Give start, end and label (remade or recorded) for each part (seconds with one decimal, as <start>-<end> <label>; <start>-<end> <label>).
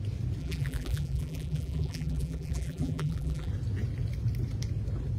0.0-0.4 recorded; 0.4-3.5 remade; 3.5-5.2 recorded